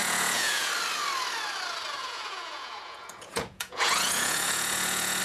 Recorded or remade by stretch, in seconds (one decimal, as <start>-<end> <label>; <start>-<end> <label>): 0.0-0.7 remade; 0.7-2.0 recorded; 2.0-5.2 remade